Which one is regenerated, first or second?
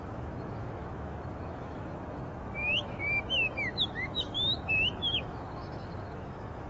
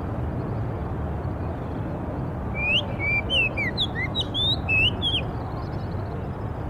first